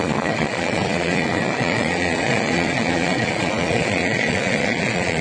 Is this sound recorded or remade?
remade